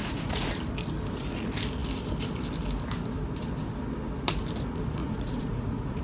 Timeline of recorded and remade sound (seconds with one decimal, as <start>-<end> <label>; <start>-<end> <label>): 0.0-0.5 remade; 0.5-5.0 recorded; 5.0-6.0 remade

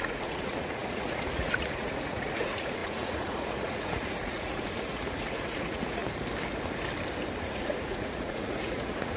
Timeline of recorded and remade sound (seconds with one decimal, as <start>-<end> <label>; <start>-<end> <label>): 0.0-6.0 remade; 6.0-7.4 recorded; 7.4-9.2 remade

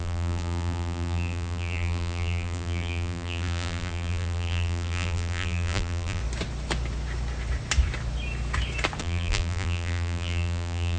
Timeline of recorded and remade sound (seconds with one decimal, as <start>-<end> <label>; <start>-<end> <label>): 0.0-6.2 remade; 6.2-9.0 recorded; 9.0-11.0 remade

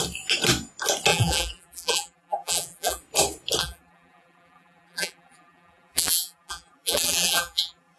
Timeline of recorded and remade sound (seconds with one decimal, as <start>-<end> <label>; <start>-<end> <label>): 0.0-1.1 recorded; 1.1-3.0 remade; 3.0-3.6 recorded; 3.6-8.0 remade

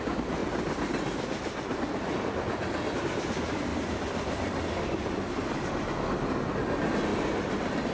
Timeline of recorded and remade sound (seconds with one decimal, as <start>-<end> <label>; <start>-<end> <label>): 0.0-7.9 recorded